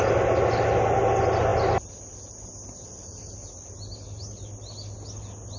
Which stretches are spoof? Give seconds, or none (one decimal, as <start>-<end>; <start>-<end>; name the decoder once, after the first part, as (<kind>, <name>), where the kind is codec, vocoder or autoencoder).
none